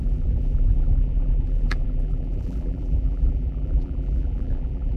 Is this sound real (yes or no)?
no